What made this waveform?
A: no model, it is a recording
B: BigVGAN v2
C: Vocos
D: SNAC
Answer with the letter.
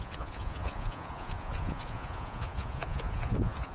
C